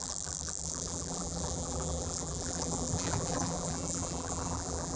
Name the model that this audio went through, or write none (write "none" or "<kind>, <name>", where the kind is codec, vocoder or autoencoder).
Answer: vocoder, BigVGAN v2